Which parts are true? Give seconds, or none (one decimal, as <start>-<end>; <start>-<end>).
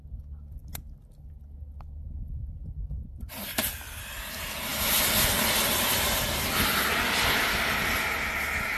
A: 0.0-8.8